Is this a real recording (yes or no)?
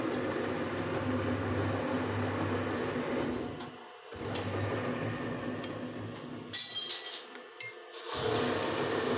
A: yes